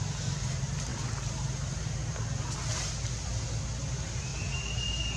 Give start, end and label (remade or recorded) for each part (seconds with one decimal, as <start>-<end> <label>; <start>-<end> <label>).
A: 0.0-0.9 remade; 0.9-3.8 recorded; 3.8-4.3 remade; 4.3-5.2 recorded